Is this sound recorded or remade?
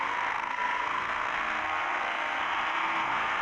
remade